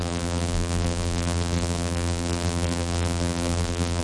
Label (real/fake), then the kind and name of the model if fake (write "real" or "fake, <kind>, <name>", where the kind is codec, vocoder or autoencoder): fake, vocoder, BigVGAN v2